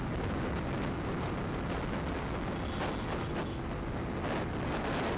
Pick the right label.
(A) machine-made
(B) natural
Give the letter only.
B